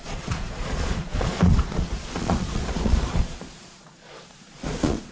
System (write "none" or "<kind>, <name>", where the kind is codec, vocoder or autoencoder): vocoder, Vocos